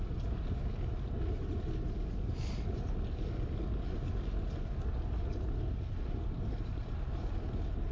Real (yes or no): yes